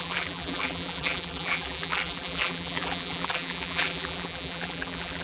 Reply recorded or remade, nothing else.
remade